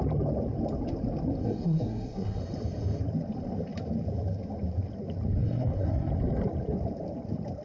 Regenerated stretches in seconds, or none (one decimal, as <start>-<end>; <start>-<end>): 1.4-2.4; 5.4-6.1